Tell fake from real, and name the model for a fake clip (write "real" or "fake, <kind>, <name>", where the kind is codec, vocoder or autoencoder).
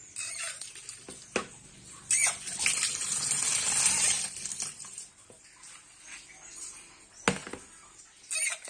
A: real